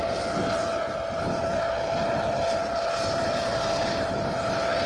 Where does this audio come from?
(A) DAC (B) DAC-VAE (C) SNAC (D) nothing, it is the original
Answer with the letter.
D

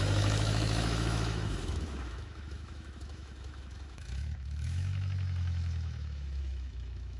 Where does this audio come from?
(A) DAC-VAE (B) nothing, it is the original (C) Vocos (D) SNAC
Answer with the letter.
A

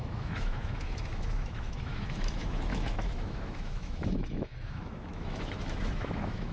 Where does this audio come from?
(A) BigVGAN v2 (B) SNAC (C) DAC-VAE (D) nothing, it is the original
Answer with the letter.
C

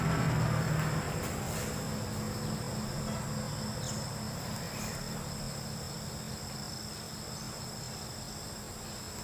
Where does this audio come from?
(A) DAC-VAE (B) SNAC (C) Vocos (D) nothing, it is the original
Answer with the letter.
D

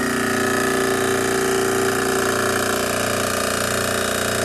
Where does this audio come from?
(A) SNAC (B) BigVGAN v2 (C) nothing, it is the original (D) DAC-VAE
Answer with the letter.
C